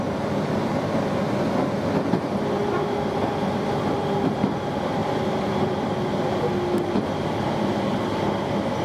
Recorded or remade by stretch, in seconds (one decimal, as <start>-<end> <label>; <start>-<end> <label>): 0.0-8.8 recorded